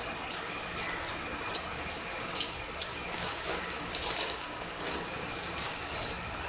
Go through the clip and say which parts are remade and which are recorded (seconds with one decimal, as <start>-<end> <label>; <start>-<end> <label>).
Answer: 0.0-1.7 recorded; 1.7-2.5 remade; 2.5-2.9 recorded; 2.9-5.8 remade; 5.8-6.5 recorded